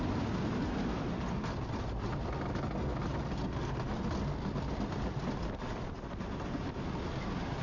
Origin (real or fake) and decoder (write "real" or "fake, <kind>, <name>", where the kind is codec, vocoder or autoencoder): real